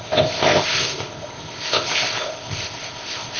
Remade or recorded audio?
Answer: remade